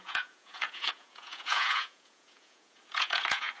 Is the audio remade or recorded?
remade